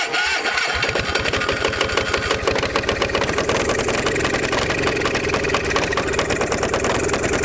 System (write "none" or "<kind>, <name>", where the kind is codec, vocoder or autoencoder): none